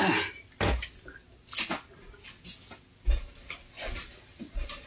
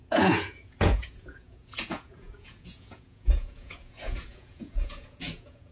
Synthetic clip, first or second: second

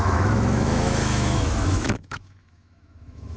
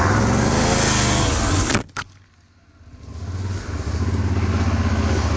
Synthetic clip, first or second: first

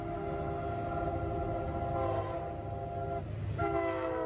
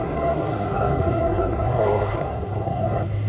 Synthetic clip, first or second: second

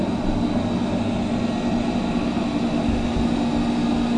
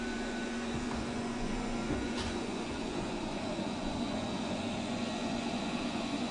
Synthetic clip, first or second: second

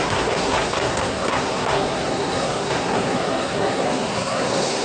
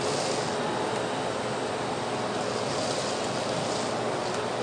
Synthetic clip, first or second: first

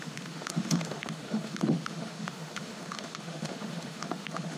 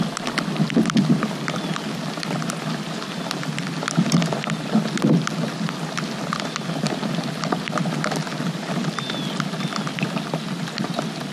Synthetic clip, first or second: first